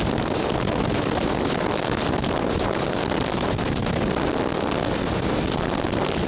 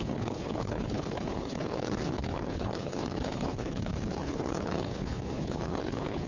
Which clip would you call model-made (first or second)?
second